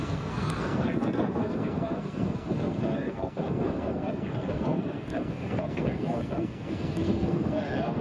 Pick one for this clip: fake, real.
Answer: fake